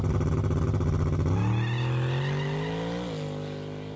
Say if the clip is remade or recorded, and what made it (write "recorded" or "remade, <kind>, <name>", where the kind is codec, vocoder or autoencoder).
recorded